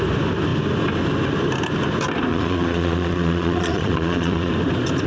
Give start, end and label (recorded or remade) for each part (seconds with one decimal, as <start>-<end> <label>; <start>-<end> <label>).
0.0-2.3 recorded; 2.3-4.5 remade; 4.5-5.1 recorded